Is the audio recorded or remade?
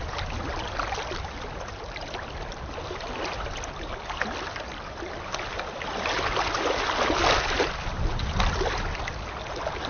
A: recorded